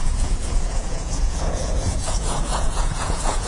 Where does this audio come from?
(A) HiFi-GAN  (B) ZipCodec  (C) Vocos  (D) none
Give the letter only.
C